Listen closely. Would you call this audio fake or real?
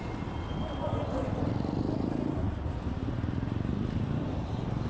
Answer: real